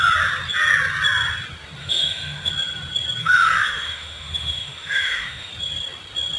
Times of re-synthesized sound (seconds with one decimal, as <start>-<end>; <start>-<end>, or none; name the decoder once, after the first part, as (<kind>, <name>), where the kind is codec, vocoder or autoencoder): 1.8-2.5 (autoencoder, DAC-VAE); 3.2-5.5